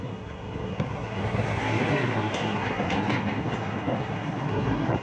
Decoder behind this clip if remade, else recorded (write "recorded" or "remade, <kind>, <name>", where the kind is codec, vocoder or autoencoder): remade, codec, SNAC